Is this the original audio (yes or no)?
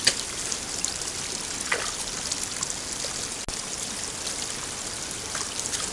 yes